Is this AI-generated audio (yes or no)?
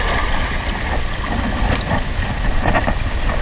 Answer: no